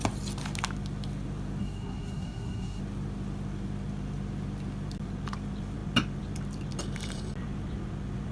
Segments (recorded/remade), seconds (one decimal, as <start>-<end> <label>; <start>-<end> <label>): 0.0-1.6 recorded; 1.6-2.8 remade; 2.8-8.3 recorded